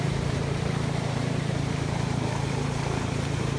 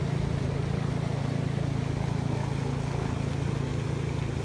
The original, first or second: second